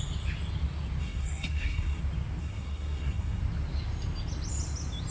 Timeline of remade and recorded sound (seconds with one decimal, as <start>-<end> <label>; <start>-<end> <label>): 0.0-1.0 recorded; 1.0-2.0 remade; 2.0-2.4 recorded; 2.4-3.4 remade; 3.4-5.1 recorded